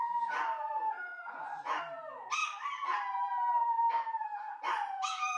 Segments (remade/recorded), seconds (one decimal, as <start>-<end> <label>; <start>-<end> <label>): 0.0-1.1 recorded; 1.1-1.8 remade; 1.8-5.4 recorded